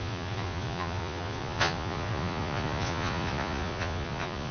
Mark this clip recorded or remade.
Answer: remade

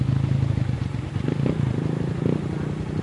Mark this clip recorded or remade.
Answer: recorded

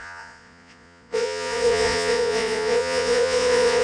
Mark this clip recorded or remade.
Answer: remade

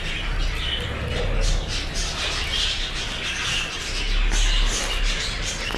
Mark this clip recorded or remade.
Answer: recorded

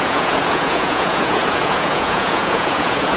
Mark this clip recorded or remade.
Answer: remade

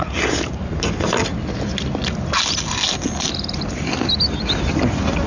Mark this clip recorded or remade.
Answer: recorded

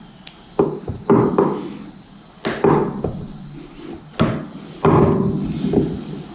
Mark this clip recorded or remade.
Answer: recorded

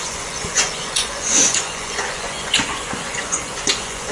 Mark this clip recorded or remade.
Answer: remade